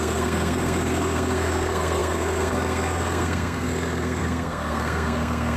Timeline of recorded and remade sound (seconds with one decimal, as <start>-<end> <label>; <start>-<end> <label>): 0.0-5.6 remade

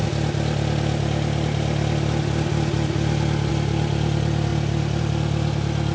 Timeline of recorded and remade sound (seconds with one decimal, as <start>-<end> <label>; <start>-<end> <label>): 0.0-5.9 recorded

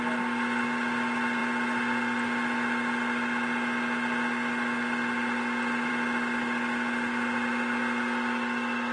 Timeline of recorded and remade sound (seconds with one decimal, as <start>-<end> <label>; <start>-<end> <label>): 0.0-8.9 recorded

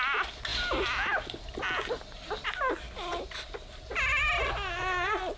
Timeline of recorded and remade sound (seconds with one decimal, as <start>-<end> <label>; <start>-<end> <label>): 0.0-5.4 recorded

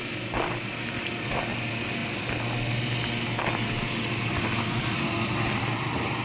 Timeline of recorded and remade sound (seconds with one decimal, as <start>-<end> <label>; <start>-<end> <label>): 0.0-6.2 recorded

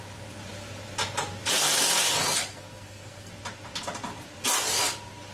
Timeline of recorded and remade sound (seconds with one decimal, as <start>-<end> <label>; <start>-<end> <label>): 0.0-2.5 recorded; 2.5-3.3 remade; 3.3-5.3 recorded

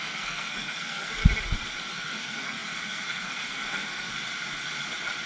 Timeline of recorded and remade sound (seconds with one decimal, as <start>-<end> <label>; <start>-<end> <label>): 0.0-1.2 remade; 1.2-1.8 recorded; 1.8-4.1 remade; 4.1-5.3 recorded

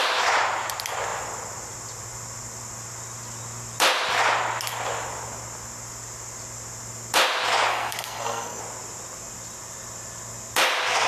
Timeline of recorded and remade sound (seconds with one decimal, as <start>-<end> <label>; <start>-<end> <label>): 0.0-7.7 recorded; 7.7-8.6 remade; 8.6-11.1 recorded